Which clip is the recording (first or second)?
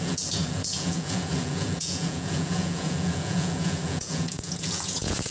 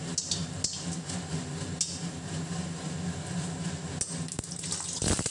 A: second